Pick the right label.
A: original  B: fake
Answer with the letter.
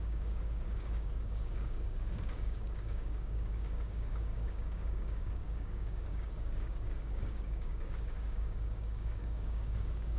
B